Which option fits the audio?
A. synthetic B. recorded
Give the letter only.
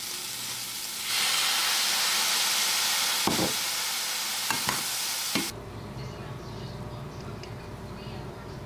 B